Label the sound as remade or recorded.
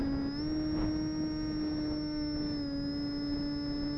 recorded